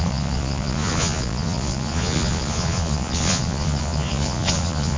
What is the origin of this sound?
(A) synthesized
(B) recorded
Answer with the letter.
A